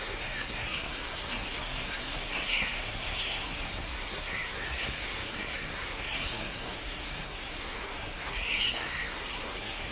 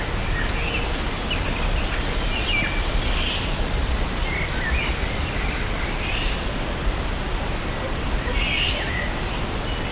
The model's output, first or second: first